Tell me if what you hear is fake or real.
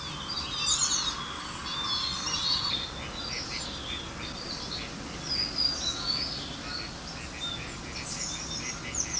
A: real